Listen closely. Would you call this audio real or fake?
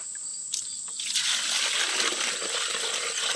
real